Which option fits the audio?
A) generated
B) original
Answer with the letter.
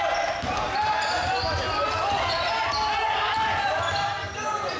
B